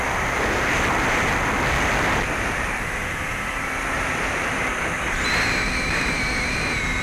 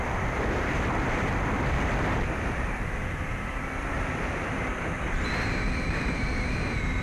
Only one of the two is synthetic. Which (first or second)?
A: second